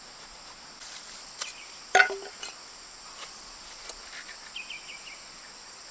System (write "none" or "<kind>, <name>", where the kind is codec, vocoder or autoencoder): none